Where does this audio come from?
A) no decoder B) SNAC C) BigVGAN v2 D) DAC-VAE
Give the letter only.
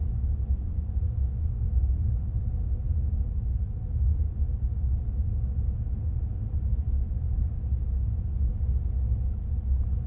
A